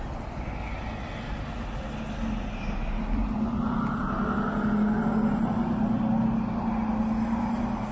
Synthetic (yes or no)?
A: no